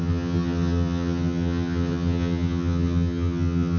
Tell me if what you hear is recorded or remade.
remade